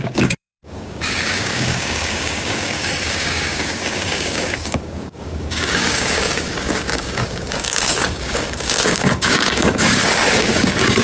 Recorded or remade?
remade